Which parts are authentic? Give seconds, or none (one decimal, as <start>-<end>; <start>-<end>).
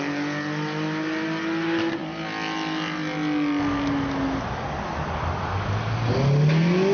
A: 0.0-6.9